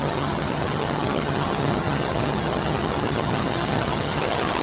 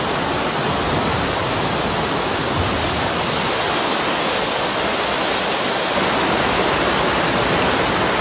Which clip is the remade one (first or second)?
first